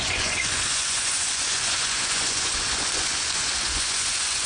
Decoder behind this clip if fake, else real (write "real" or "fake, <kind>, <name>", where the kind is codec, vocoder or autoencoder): fake, vocoder, Vocos